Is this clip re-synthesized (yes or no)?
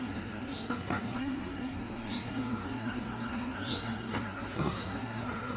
yes